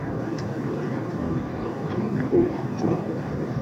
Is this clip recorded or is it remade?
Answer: remade